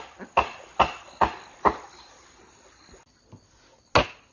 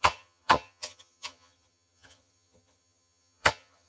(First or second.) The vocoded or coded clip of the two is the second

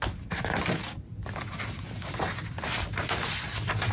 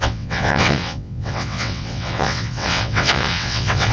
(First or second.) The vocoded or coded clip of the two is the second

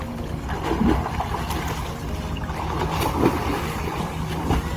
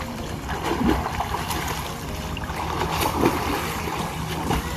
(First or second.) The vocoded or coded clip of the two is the second